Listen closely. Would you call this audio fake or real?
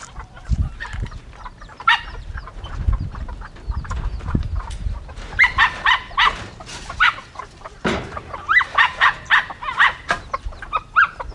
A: fake